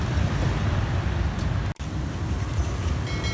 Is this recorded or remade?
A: recorded